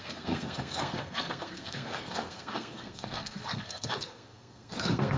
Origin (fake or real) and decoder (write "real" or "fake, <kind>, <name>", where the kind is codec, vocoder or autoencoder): fake, codec, SNAC